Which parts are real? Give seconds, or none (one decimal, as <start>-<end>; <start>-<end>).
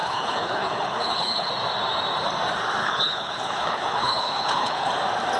1.5-2.8; 4.9-5.4